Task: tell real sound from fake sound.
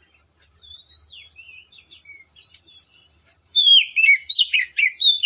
fake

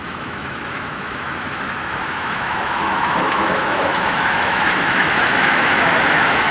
fake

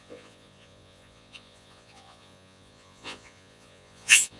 fake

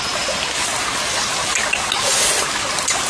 real